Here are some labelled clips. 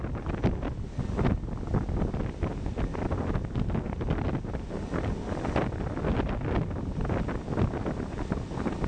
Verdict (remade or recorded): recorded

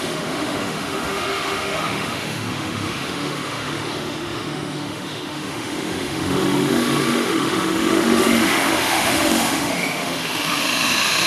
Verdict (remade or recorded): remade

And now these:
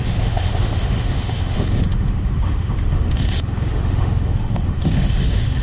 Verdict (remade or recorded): remade